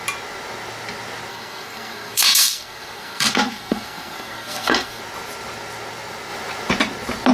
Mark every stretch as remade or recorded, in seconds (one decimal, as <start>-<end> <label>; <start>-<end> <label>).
0.0-1.3 recorded; 1.3-5.0 remade; 5.0-7.3 recorded

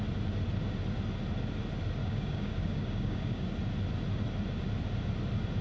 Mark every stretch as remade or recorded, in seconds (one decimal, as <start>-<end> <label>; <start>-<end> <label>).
0.0-2.0 recorded; 2.0-3.5 remade; 3.5-5.6 recorded